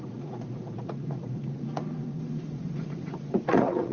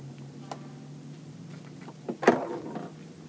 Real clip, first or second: second